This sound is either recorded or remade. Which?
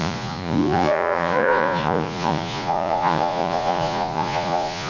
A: remade